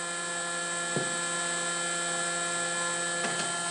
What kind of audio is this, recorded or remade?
recorded